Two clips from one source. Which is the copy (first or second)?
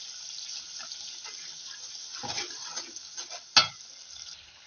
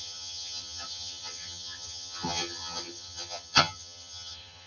second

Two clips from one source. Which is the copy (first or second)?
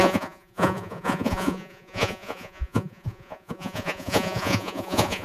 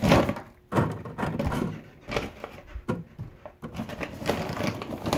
first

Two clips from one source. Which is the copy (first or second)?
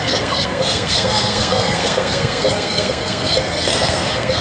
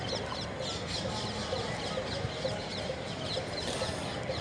first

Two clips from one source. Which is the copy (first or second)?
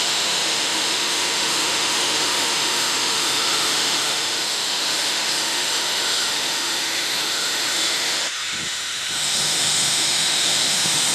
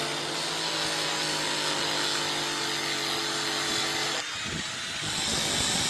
first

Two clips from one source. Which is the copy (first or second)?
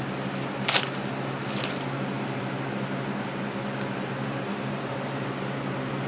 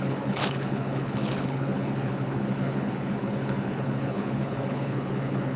second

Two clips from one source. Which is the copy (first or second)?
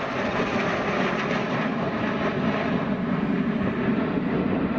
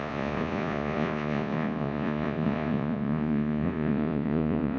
second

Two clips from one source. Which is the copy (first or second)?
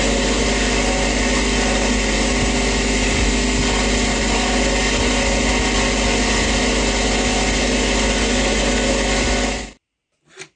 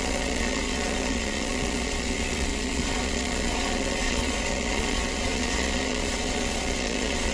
second